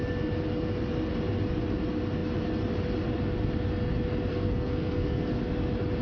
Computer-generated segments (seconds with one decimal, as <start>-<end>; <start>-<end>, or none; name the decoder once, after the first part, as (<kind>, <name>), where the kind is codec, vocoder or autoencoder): 4.3-5.4 (codec, SNAC)